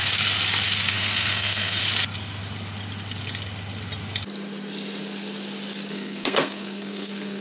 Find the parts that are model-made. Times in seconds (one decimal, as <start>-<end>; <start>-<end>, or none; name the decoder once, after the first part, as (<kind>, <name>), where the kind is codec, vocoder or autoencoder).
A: 0.9-1.8 (codec, SNAC); 5.9-7.4